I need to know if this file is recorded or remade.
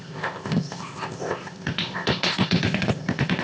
remade